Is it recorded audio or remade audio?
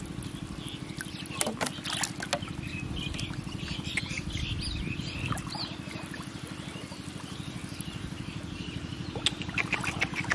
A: recorded